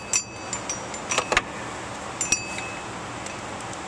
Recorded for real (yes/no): yes